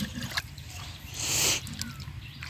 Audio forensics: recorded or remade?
recorded